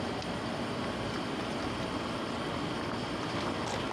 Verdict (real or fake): real